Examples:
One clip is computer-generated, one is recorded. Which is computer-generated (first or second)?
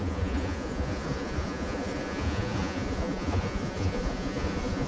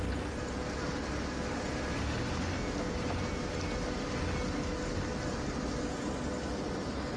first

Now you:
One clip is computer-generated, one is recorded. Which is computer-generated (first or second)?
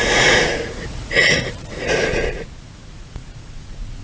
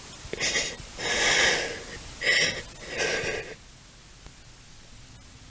first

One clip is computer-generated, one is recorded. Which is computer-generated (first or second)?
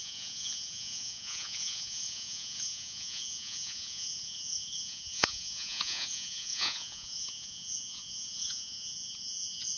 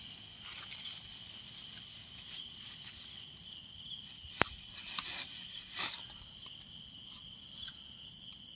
first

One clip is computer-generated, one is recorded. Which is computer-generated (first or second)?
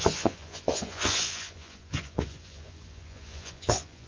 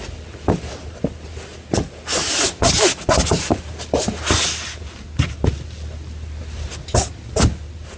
first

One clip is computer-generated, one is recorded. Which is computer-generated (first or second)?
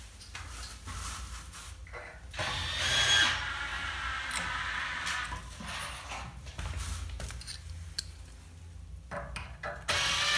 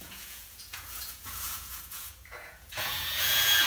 second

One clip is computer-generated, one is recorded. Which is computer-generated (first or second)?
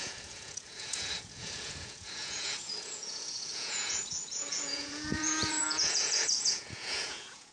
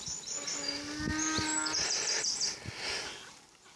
first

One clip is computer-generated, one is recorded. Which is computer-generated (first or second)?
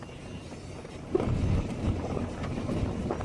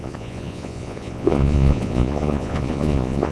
second